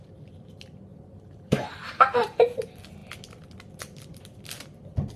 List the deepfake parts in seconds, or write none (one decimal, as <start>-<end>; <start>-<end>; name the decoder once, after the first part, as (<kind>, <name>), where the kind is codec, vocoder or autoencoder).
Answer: 0.9-2.6 (vocoder, BigVGAN v2)